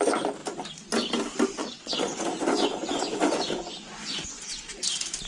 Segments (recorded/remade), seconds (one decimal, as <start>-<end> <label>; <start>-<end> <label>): 0.0-1.6 recorded; 1.6-4.8 remade; 4.8-5.3 recorded